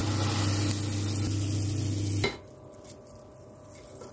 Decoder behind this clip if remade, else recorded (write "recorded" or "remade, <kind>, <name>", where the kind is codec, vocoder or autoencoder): recorded